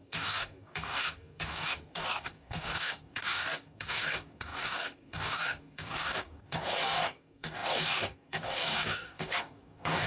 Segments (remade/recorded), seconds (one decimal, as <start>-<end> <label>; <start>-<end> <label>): 0.0-10.1 remade